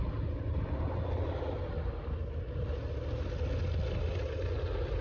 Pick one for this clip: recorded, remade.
recorded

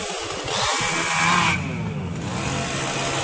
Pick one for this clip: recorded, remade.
recorded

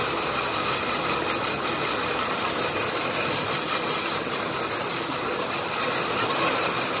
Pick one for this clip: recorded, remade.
recorded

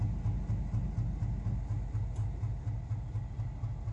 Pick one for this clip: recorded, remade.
recorded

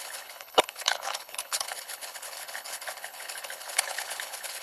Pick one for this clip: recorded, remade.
remade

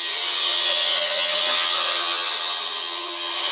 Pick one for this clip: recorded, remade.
remade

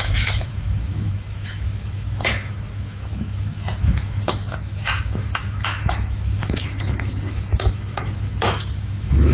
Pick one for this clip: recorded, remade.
remade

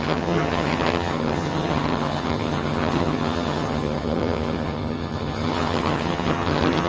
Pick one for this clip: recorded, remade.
remade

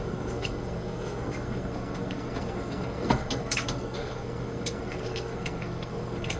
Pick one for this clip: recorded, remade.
remade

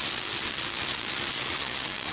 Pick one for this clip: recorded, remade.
remade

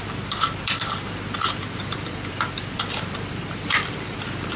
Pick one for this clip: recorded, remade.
remade